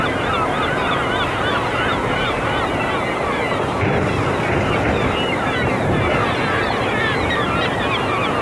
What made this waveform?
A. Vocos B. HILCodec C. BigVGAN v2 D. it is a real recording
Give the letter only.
D